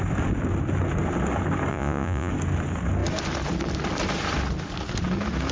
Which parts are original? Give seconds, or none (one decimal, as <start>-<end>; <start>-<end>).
0.0-1.7; 2.3-5.5

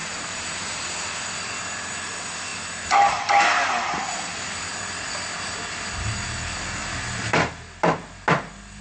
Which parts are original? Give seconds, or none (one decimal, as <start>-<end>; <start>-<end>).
0.6-6.8; 7.5-8.8